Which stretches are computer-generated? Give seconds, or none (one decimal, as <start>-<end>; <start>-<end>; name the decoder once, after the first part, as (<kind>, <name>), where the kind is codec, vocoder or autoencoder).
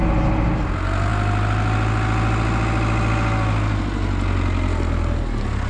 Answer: none